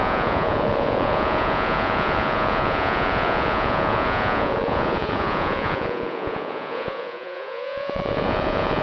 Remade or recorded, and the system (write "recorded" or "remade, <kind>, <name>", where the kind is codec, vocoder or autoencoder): remade, vocoder, Vocos